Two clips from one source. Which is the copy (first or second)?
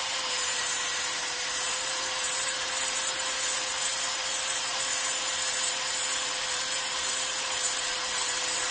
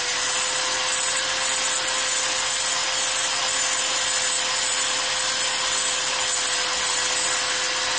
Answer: first